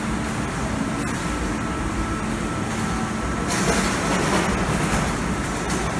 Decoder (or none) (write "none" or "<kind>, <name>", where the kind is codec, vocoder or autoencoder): none